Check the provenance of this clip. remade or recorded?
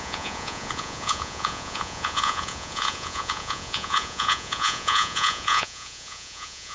remade